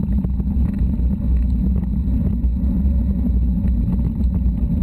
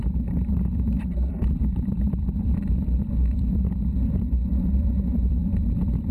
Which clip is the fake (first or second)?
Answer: second